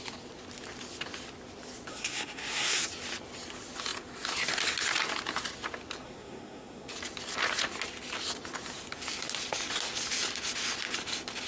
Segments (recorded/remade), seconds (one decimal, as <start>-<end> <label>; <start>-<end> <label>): 0.0-1.9 recorded; 1.9-2.8 remade; 2.8-6.0 recorded; 6.0-6.9 remade; 6.9-11.5 recorded

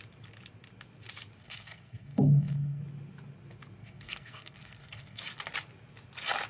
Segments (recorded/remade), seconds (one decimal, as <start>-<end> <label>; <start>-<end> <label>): 0.0-1.4 recorded; 1.4-2.8 remade; 2.8-3.8 recorded; 3.8-5.2 remade; 5.2-6.5 recorded

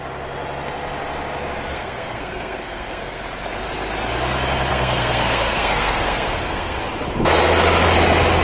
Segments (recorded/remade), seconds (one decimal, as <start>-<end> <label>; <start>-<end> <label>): 0.0-1.7 recorded; 1.7-3.2 remade; 3.2-4.7 recorded; 4.7-6.8 remade; 6.8-8.4 recorded

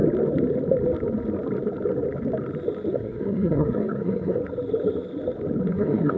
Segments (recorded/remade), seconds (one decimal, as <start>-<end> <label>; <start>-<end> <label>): 0.0-2.9 recorded; 2.9-4.4 remade; 4.4-5.7 recorded; 5.7-6.2 remade